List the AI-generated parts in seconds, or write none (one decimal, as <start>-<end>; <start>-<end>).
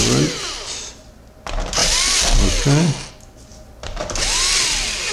1.8-3.1; 3.5-4.0